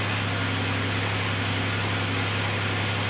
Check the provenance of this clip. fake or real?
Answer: real